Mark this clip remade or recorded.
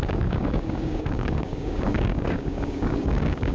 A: remade